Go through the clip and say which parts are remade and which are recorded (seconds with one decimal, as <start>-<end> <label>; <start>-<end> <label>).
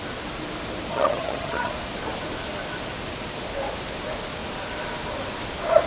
0.0-0.9 recorded; 0.9-1.7 remade; 1.7-5.9 recorded